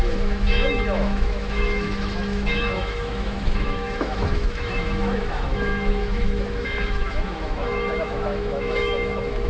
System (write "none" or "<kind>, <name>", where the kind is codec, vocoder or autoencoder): autoencoder, DAC-VAE